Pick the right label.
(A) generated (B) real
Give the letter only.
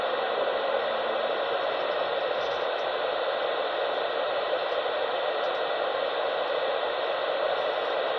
B